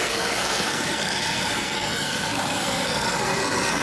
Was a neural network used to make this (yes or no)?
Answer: yes